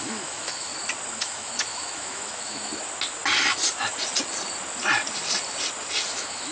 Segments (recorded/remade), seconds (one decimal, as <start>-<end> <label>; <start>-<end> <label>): 0.0-0.7 remade; 0.7-1.2 recorded; 1.2-2.7 remade; 2.7-6.1 recorded; 6.1-6.5 remade